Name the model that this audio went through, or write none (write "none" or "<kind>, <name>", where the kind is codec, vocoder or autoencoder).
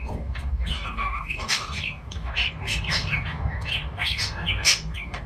codec, DAC